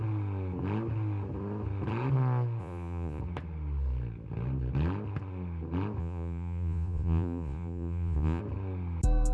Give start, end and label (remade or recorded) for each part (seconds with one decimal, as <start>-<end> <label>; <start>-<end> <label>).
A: 0.0-2.6 recorded; 2.6-3.2 remade; 3.2-6.0 recorded; 6.0-8.4 remade; 8.4-9.3 recorded